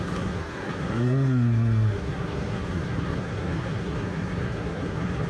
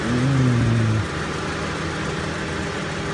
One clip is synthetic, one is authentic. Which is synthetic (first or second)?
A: first